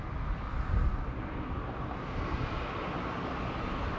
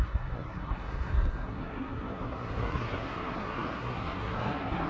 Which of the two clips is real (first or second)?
first